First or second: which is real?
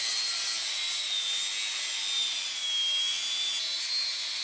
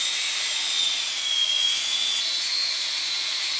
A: first